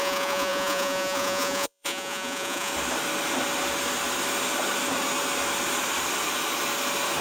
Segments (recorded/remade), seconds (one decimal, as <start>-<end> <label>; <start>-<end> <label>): 0.0-2.7 remade; 2.7-7.2 recorded